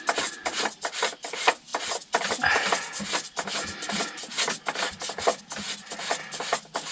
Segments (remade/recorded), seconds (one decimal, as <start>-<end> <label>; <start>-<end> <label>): 0.0-6.9 recorded

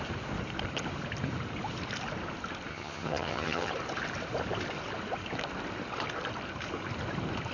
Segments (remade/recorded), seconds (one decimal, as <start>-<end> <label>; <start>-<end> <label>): 0.0-2.7 recorded; 2.7-3.7 remade; 3.7-7.5 recorded

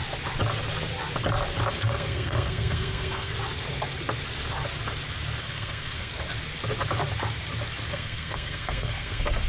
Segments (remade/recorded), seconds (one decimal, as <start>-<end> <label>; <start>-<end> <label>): 0.0-1.7 recorded; 1.7-3.3 remade; 3.3-5.4 recorded; 5.4-6.1 remade; 6.1-7.9 recorded; 7.9-9.5 remade

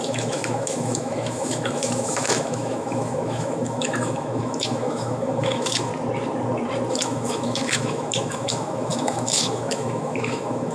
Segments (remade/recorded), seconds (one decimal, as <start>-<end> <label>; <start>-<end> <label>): 0.0-5.9 remade; 5.9-6.9 recorded; 6.9-10.7 remade